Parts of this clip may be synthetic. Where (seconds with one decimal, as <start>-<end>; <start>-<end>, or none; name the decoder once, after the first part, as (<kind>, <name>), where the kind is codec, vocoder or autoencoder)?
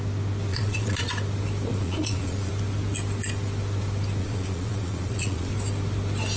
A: 0.5-1.1 (vocoder, Vocos); 1.7-2.5; 4.2-5.5